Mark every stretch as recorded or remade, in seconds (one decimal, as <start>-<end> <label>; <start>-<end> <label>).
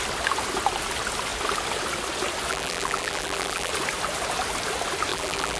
0.0-2.5 recorded; 2.5-3.7 remade; 3.7-5.1 recorded; 5.1-5.6 remade